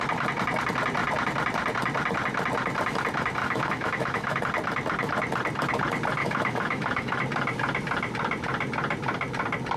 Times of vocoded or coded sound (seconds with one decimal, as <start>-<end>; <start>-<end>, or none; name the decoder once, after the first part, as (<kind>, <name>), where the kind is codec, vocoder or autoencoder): 3.4-4.4 (autoencoder, DAC-VAE); 6.2-7.2